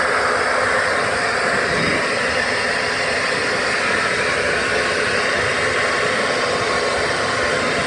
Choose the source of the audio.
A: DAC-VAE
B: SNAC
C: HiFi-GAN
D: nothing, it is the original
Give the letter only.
D